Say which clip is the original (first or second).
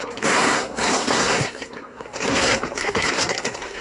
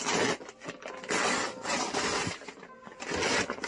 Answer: second